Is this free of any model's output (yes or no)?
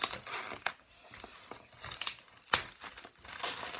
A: yes